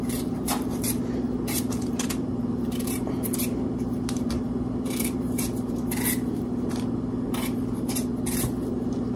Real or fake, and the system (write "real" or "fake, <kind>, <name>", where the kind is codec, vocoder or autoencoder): fake, vocoder, BigVGAN v2